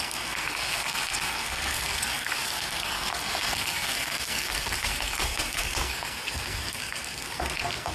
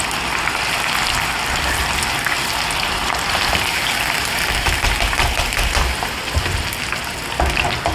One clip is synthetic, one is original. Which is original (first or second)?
second